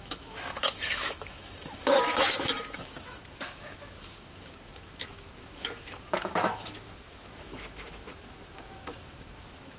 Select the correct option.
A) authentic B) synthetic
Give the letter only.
B